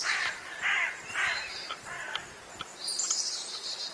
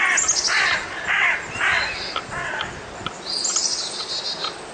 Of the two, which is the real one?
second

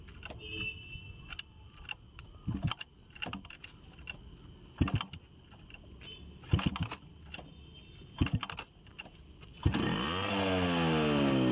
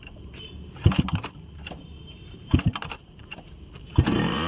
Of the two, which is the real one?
first